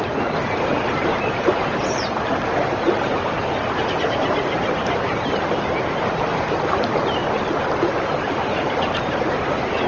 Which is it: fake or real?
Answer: real